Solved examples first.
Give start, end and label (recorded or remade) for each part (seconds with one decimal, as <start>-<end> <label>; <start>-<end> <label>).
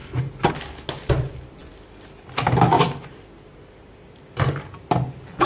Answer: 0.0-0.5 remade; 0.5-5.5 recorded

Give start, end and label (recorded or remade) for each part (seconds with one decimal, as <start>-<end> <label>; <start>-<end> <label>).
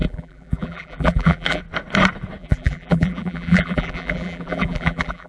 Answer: 0.0-1.6 remade; 1.6-2.4 recorded; 2.4-5.3 remade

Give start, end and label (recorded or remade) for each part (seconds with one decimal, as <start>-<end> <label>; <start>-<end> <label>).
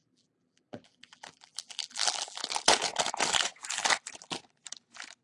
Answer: 0.0-2.6 remade; 2.6-5.2 recorded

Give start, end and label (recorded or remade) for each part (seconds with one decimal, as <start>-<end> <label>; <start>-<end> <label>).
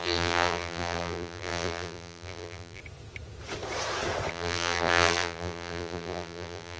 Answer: 0.0-2.8 remade; 2.8-4.3 recorded; 4.3-6.8 remade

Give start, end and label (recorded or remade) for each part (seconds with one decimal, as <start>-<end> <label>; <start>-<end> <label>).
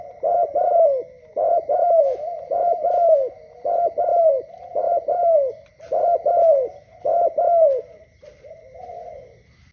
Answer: 0.0-9.7 recorded